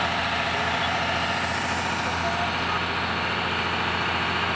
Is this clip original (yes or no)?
yes